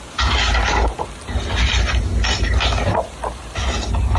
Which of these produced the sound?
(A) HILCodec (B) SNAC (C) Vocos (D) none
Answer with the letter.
D